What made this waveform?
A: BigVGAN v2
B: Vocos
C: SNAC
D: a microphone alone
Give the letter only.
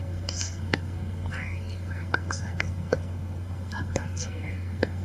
C